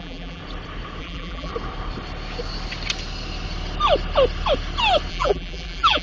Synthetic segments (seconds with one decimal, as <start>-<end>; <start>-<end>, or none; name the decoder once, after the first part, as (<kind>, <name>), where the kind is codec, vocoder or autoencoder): 0.0-0.4 (vocoder, BigVGAN v2); 1.0-1.5; 5.1-6.0